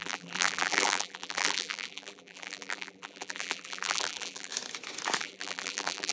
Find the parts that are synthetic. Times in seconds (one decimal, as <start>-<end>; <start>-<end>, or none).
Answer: 0.0-4.5; 5.2-6.1